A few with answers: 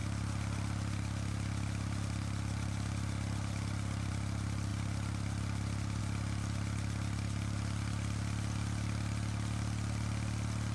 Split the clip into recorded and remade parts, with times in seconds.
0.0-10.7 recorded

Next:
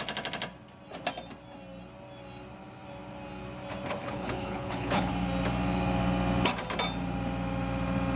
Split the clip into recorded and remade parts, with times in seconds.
0.0-4.0 recorded; 4.0-5.1 remade; 5.1-8.2 recorded

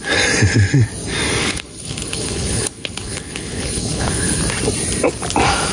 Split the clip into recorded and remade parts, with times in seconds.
0.0-1.4 recorded; 1.4-4.4 remade; 4.4-5.7 recorded